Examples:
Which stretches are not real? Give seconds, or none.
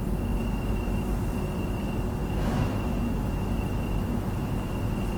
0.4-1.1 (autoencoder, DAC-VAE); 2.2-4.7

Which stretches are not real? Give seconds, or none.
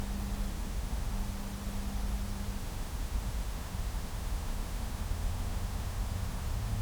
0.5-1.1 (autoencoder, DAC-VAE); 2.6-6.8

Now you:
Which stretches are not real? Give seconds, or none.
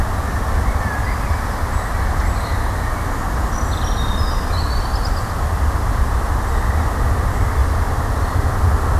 none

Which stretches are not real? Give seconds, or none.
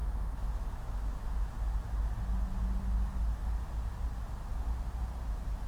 0.0-1.5 (autoencoder, DAC-VAE)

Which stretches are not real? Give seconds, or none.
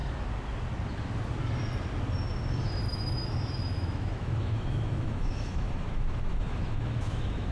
2.9-7.5 (autoencoder, DAC-VAE)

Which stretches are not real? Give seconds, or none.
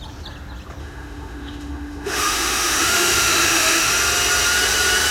0.8-3.9 (autoencoder, DAC-VAE)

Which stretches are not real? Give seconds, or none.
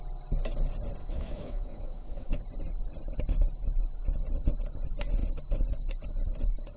1.0-2.4 (autoencoder, DAC-VAE)